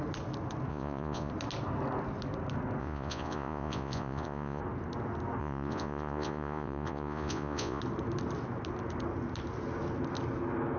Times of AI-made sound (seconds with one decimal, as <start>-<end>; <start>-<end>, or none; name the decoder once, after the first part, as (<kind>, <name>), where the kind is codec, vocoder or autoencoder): 0.7-1.3 (vocoder, Vocos); 2.8-4.6; 5.4-7.8